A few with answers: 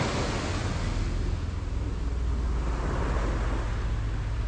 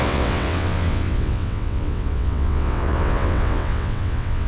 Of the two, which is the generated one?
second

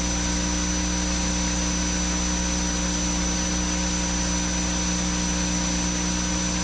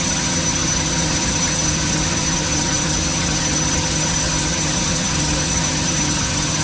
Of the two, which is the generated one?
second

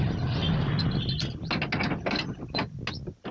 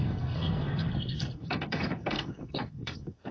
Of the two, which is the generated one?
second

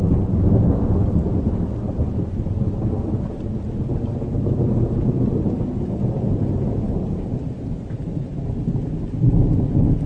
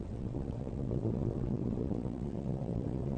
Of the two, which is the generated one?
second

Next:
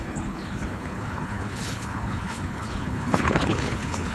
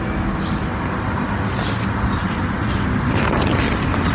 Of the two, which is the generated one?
first